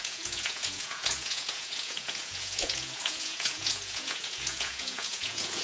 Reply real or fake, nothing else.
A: fake